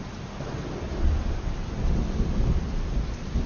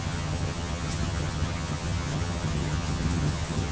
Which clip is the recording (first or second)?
first